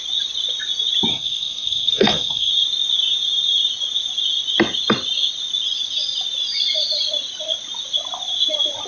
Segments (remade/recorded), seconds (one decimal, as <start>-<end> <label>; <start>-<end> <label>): 0.0-1.1 recorded; 1.1-2.5 remade; 2.5-8.9 recorded